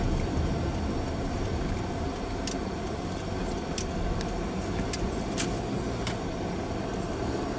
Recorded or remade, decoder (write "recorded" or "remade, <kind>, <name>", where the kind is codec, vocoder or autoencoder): recorded